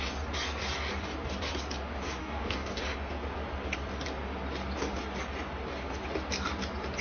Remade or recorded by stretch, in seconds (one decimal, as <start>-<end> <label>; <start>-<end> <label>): 0.0-2.2 recorded; 2.2-2.8 remade; 2.8-7.0 recorded